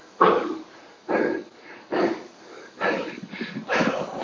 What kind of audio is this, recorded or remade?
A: remade